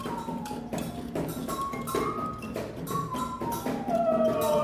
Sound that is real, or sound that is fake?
real